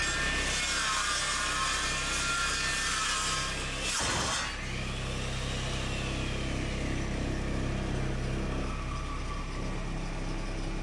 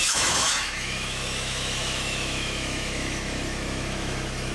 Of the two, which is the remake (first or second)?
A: second